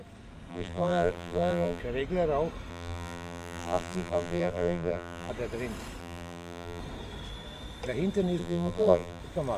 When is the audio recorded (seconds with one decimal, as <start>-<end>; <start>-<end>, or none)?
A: 0.0-0.5; 1.8-2.7; 5.3-6.0; 6.8-8.4; 9.2-9.6

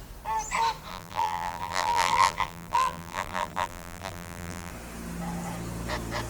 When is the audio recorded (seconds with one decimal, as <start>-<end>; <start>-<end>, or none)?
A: 0.0-0.9; 4.7-6.3

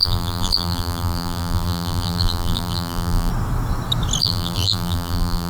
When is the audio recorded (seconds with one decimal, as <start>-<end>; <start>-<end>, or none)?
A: 3.3-4.2